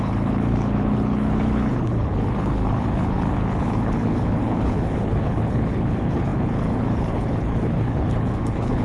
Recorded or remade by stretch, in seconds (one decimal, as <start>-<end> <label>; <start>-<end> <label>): 0.0-8.8 remade